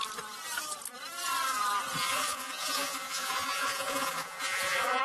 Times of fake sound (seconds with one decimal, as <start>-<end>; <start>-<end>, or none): 2.0-5.0